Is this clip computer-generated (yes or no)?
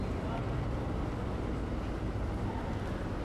no